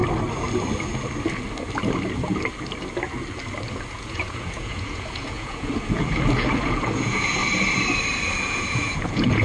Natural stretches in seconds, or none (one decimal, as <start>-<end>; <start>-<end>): 0.0-3.7; 7.4-8.4